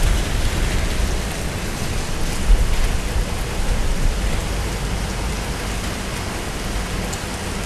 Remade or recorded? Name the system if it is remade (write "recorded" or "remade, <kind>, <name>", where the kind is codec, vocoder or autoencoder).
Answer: recorded